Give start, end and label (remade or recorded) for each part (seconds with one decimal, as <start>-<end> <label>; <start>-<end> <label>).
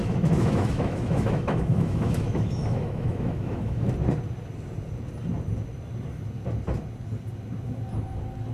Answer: 0.0-3.9 remade; 3.9-8.5 recorded